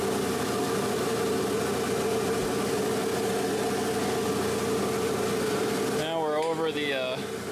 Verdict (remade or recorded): recorded